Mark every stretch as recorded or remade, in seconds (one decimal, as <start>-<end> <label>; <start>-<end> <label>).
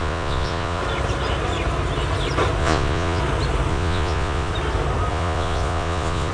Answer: 0.0-0.8 remade; 0.8-2.6 recorded; 2.6-3.2 remade; 3.2-3.7 recorded; 3.7-4.5 remade; 4.5-5.1 recorded; 5.1-6.3 remade